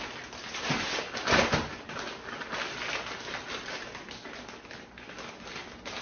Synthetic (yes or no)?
no